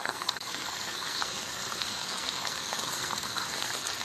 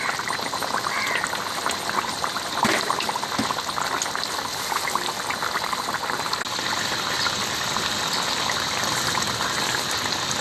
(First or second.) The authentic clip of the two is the second